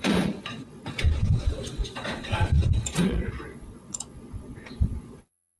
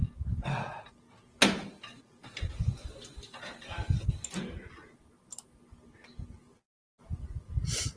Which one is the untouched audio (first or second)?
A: second